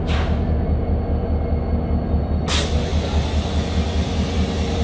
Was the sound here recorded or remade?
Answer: recorded